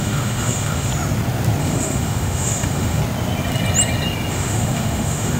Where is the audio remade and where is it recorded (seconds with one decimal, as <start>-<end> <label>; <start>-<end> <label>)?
0.0-0.9 remade; 0.9-1.6 recorded; 1.6-3.0 remade; 3.0-4.3 recorded; 4.3-5.4 remade